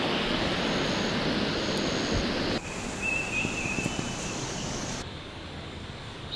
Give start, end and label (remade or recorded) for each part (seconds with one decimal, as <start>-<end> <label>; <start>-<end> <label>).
0.0-0.5 remade; 0.5-4.3 recorded; 4.3-6.4 remade